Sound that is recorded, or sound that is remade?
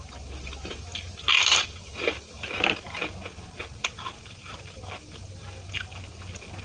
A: recorded